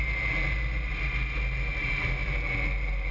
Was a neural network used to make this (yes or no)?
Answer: no